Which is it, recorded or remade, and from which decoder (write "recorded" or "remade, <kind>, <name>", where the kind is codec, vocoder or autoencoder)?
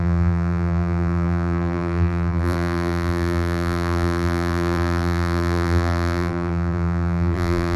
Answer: remade, vocoder, BigVGAN v2